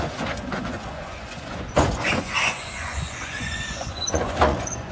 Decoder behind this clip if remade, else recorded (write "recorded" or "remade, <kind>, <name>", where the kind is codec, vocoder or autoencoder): remade, vocoder, Vocos